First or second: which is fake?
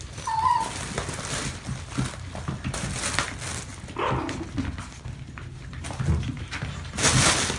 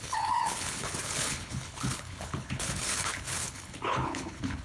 second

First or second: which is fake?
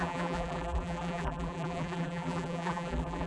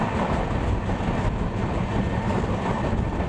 first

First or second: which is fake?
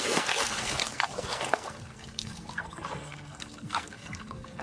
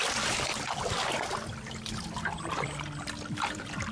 first